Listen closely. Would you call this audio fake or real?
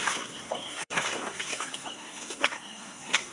fake